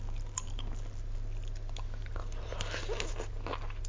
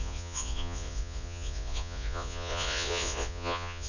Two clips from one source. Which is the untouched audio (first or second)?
first